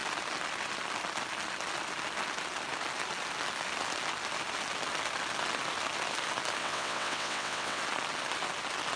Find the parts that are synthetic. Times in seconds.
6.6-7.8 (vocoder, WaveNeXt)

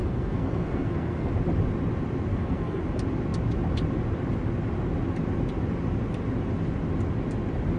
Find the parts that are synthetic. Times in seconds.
0.0-1.3 (codec, SNAC); 2.3-2.8

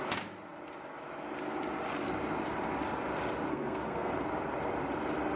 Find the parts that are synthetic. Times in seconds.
3.5-4.1 (codec, SNAC)

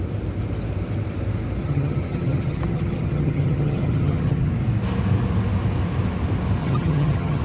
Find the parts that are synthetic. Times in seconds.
1.6-4.5 (vocoder, HiFi-GAN); 6.6-7.4